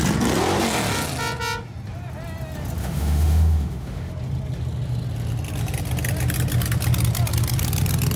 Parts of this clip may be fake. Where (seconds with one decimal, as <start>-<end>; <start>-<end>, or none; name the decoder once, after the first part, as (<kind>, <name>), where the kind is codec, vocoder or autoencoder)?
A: 2.8-4.1 (autoencoder, DAC-VAE)